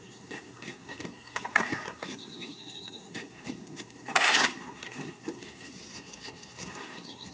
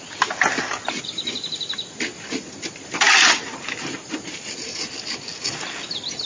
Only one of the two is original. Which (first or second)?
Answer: second